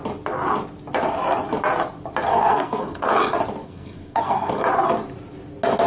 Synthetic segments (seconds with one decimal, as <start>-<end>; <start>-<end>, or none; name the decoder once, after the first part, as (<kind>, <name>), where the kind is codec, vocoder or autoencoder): 2.3-3.1 (codec, SNAC); 3.6-4.5